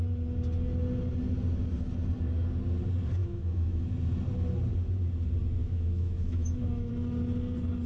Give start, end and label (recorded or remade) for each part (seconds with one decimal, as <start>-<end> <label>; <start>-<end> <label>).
0.0-3.2 recorded; 3.2-3.8 remade; 3.8-5.6 recorded; 5.6-6.9 remade; 6.9-7.9 recorded